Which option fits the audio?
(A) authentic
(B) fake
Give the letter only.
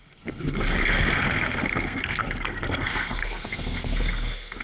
B